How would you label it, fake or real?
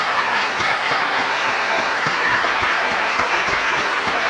fake